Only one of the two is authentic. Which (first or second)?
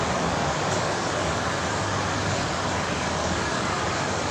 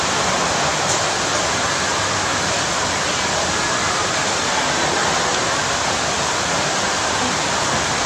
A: second